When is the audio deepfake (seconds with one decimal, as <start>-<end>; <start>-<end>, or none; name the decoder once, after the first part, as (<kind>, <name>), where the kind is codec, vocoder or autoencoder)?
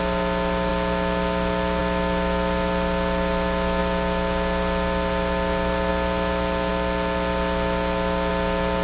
none